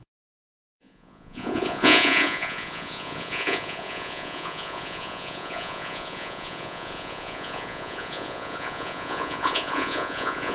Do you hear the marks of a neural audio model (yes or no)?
yes